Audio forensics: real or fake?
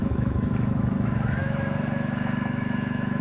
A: fake